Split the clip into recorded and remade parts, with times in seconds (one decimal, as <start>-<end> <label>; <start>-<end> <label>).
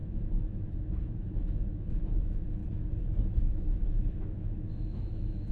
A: 0.0-2.6 remade; 2.6-3.3 recorded; 3.3-5.5 remade